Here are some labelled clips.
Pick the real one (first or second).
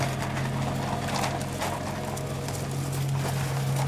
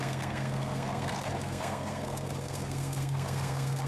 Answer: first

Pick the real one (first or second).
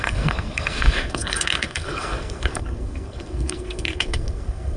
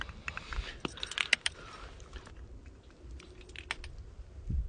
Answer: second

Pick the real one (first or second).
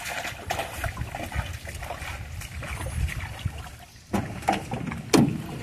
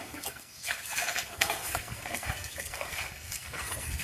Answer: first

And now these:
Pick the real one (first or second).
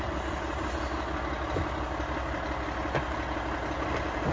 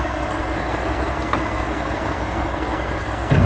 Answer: first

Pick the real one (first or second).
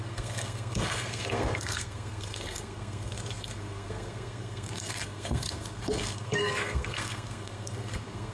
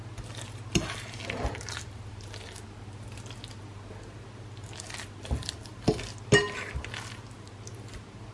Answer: second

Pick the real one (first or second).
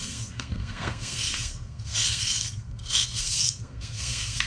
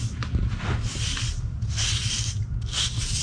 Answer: second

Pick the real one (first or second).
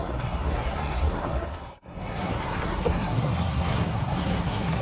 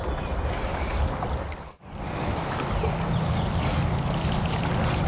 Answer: second